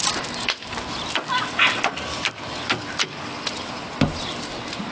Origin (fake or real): real